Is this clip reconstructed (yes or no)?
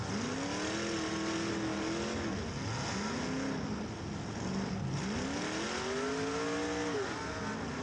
no